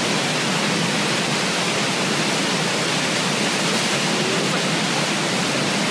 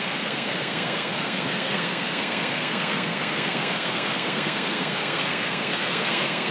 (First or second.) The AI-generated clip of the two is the second